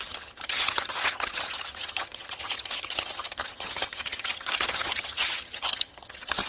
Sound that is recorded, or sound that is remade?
remade